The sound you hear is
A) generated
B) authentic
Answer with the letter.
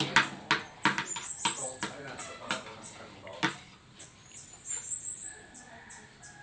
B